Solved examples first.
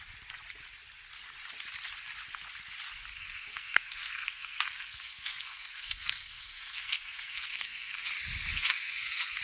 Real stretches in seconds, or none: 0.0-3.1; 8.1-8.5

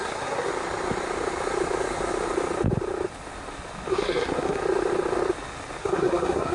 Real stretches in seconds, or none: 0.5-3.9; 4.6-5.8

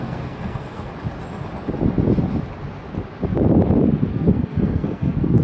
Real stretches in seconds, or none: 0.9-4.1

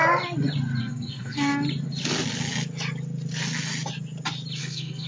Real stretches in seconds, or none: 0.0-0.8; 1.5-4.6

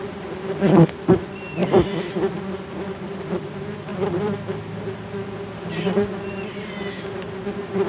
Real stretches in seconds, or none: 0.0-7.9

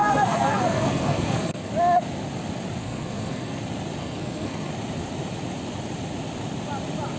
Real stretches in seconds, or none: 1.7-2.8; 3.6-4.0; 4.7-7.2

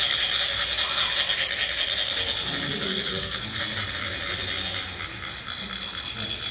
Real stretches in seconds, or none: 0.0-2.8; 3.6-6.5